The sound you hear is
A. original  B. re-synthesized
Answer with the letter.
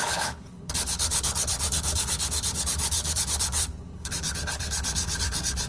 B